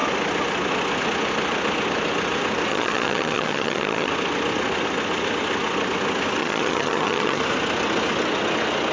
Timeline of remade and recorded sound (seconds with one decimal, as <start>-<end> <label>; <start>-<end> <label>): 0.0-2.7 recorded; 2.7-4.1 remade; 4.1-6.4 recorded; 6.4-7.4 remade; 7.4-8.9 recorded

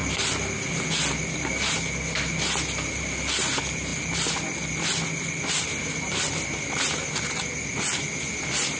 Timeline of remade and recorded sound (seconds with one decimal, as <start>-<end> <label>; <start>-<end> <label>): 0.0-8.8 recorded